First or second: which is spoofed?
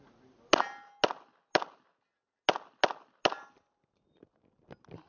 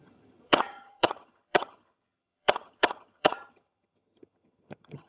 second